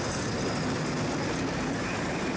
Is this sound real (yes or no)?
yes